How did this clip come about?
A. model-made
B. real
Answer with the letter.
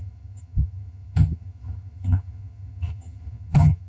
A